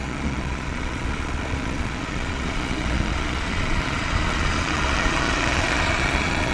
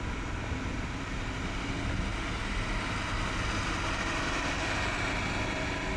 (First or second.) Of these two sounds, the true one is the second